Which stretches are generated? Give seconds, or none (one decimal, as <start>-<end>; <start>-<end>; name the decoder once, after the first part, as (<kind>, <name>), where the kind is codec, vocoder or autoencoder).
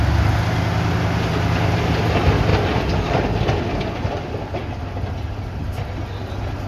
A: none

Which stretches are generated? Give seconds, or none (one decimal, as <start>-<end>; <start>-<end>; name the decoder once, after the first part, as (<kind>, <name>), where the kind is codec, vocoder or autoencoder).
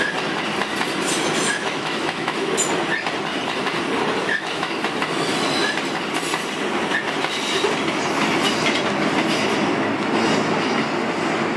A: 1.6-2.5 (autoencoder, DAC-VAE); 4.2-4.7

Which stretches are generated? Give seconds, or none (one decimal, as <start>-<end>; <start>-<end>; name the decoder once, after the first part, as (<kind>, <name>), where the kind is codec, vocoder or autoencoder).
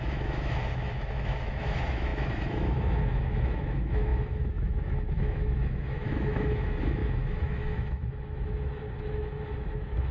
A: 0.0-10.1 (autoencoder, DAC-VAE)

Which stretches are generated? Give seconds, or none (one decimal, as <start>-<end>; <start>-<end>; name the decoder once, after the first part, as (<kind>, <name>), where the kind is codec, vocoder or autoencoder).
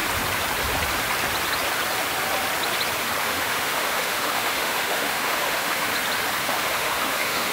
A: 3.2-5.9 (autoencoder, DAC-VAE); 6.4-7.5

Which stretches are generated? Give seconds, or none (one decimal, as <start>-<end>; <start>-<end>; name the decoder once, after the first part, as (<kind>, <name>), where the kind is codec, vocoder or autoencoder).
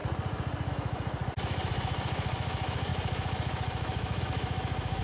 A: 0.7-1.2 (autoencoder, DAC-VAE); 1.8-5.0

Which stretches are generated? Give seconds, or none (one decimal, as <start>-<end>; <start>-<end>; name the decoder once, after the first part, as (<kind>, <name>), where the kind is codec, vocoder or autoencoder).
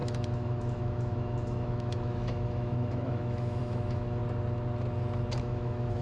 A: 0.0-4.2 (autoencoder, DAC-VAE); 5.4-6.0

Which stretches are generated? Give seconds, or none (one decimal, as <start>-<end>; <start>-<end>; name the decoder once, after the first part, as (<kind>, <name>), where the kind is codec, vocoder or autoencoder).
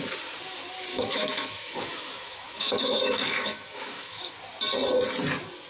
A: 0.9-4.3 (autoencoder, DAC-VAE)